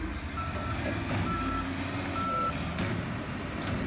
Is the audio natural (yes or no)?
yes